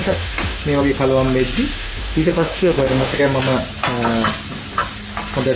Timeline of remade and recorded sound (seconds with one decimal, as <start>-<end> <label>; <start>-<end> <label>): 0.0-0.6 remade; 0.6-1.7 recorded; 1.7-3.2 remade; 3.2-5.6 recorded